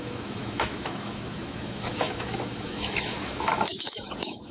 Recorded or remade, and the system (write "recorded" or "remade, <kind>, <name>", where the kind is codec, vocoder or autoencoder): remade, autoencoder, DAC-VAE